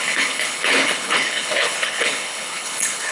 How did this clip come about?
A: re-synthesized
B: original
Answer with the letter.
A